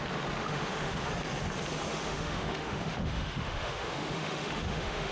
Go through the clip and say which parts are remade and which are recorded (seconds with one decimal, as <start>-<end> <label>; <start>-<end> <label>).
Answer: 0.0-0.4 recorded; 0.4-1.1 remade; 1.1-1.9 recorded; 1.9-5.1 remade